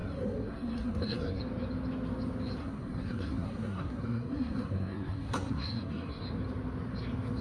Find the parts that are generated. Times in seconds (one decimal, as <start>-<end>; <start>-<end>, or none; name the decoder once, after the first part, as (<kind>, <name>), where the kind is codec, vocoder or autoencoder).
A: 0.0-1.4 (codec, SNAC); 2.6-6.2